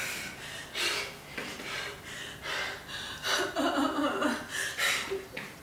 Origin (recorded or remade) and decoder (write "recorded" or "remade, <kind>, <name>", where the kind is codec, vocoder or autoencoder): recorded